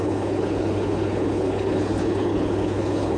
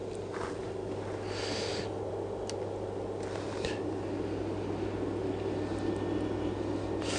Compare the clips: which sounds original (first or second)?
second